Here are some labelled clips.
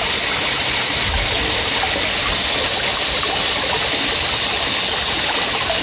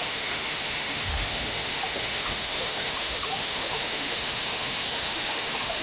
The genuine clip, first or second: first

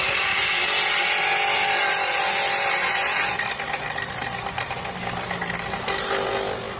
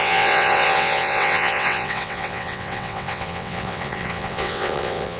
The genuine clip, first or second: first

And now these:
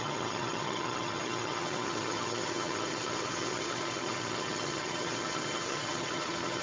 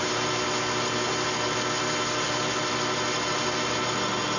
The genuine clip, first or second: second